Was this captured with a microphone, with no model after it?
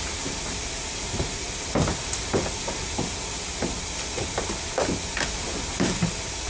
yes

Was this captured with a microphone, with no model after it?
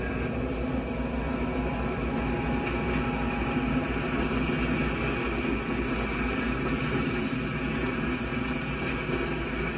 yes